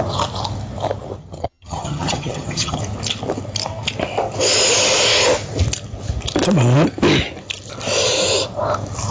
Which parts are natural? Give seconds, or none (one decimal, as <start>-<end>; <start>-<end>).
0.0-1.2; 2.8-9.1